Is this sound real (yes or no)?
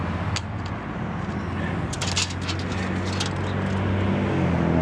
yes